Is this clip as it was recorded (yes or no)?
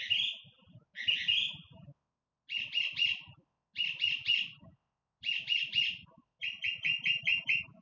yes